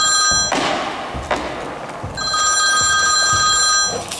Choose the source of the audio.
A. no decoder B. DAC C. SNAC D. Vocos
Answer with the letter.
A